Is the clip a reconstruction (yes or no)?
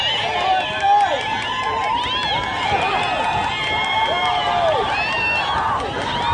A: no